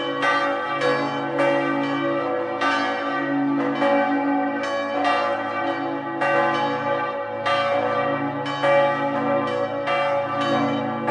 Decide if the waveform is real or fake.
real